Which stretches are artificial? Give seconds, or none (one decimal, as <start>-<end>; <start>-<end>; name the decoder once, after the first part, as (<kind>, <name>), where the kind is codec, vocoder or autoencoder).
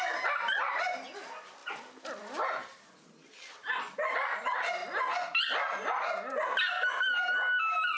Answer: none